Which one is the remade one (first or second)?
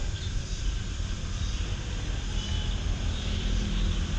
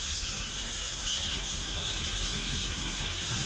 second